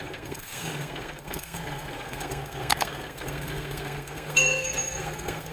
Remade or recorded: remade